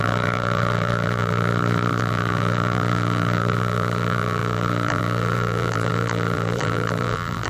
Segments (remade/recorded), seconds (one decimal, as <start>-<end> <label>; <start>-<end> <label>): 0.0-7.5 remade

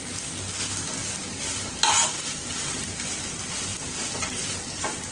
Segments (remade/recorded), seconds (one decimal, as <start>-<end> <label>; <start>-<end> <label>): 0.0-5.1 recorded

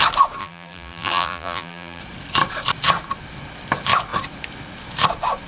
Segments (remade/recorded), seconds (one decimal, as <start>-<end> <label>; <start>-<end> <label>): 0.0-0.4 recorded; 0.4-2.0 remade; 2.0-5.5 recorded